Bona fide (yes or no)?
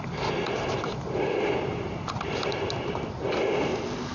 yes